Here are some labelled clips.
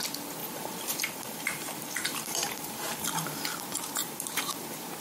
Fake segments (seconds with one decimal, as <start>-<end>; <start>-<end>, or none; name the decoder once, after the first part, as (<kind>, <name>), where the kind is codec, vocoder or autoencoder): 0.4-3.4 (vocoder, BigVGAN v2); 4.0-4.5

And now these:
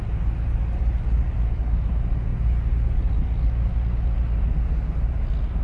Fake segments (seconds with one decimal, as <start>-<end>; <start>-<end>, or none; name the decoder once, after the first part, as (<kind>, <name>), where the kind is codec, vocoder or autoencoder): none

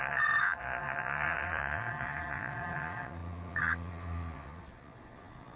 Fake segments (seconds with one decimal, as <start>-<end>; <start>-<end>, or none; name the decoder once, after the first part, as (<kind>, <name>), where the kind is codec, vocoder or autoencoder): 0.0-5.6 (vocoder, Vocos)